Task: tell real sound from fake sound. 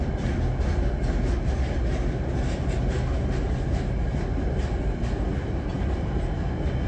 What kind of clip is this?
real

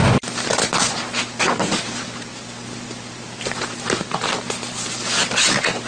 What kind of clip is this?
real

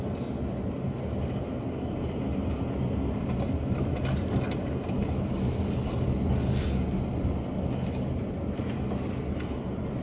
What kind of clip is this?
real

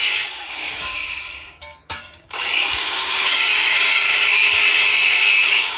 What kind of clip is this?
fake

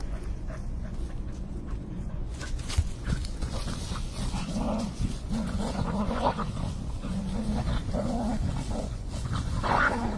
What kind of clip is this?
fake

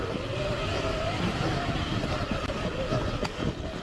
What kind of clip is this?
real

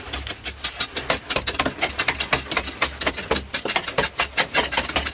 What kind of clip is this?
real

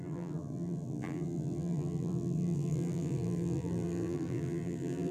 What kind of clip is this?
fake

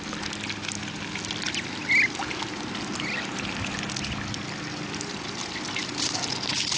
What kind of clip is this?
real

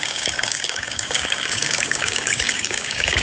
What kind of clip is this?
fake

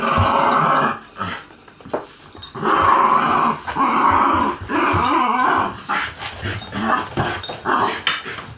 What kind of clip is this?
real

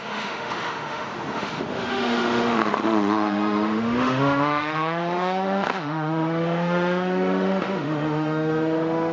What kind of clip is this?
fake